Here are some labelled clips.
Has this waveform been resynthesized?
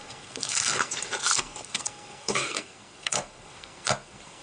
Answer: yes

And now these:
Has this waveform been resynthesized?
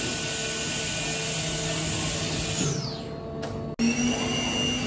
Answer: no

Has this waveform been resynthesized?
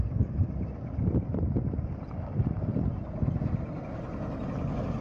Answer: no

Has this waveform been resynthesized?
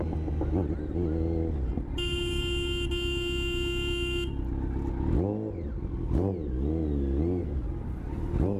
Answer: no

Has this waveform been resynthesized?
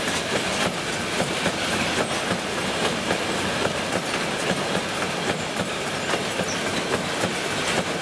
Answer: no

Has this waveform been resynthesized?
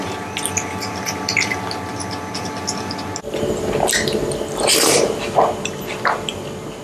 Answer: no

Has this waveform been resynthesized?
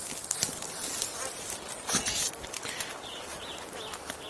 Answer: no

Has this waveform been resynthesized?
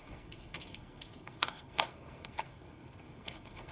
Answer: yes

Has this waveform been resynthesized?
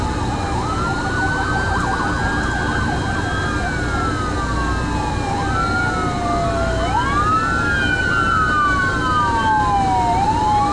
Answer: no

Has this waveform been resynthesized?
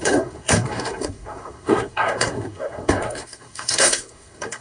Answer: yes